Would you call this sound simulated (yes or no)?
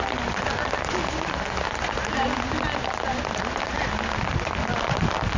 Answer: no